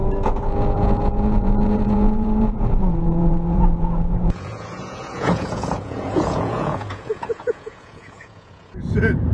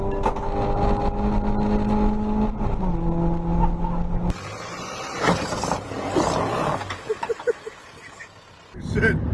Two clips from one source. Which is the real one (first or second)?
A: second